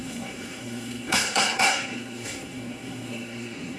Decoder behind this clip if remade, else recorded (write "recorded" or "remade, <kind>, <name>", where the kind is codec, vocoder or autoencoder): remade, codec, SNAC